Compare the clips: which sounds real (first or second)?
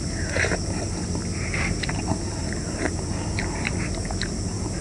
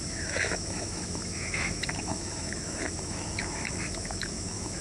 first